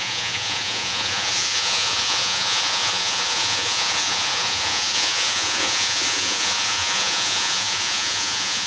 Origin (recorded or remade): remade